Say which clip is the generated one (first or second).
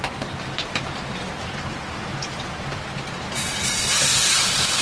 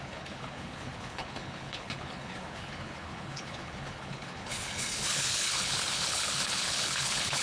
second